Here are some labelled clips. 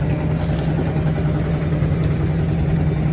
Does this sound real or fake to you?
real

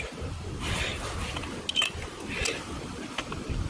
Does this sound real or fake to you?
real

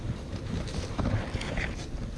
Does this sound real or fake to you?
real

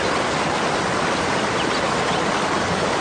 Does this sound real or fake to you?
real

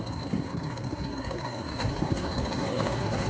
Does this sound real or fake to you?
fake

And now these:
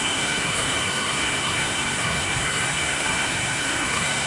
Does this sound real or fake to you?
fake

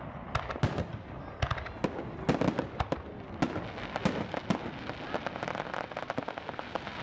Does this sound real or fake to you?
real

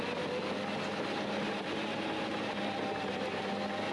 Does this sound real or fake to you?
real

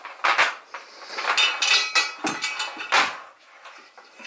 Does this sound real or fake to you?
real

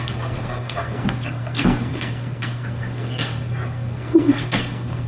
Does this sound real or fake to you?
fake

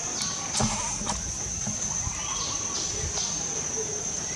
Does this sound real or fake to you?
real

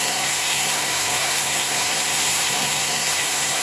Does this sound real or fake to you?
fake